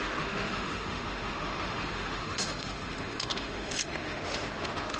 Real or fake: fake